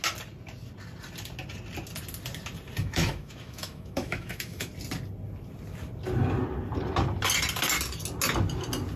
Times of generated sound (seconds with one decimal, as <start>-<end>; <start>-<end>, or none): 2.8-4.7